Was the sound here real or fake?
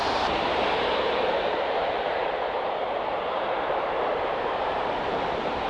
fake